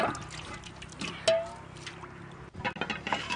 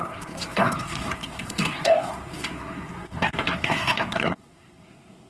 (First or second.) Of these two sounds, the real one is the first